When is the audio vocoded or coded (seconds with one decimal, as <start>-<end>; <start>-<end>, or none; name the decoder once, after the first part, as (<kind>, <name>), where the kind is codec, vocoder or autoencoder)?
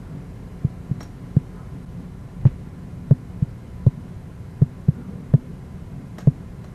0.0-0.5 (vocoder, BigVGAN v2); 4.3-6.7